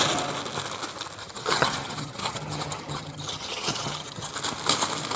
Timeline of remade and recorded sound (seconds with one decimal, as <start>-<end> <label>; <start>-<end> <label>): 0.0-1.2 recorded; 1.2-4.3 remade; 4.3-5.2 recorded